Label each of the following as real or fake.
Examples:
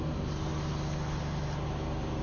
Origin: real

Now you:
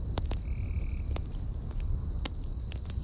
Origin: real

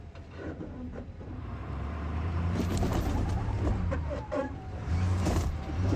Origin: fake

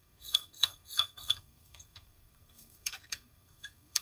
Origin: fake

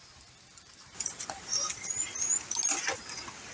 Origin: real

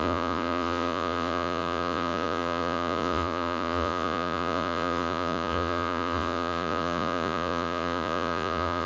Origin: fake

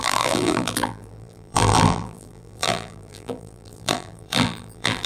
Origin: fake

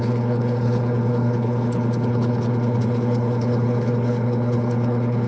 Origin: fake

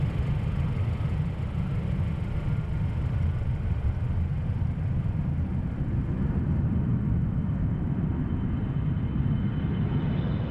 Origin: real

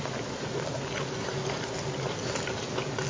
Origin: real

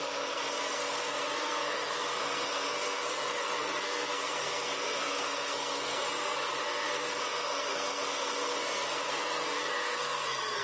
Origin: fake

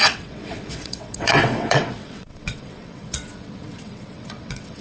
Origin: fake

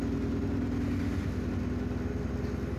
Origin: real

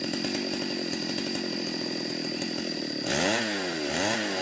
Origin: real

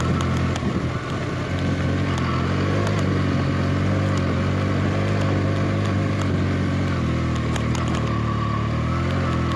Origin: real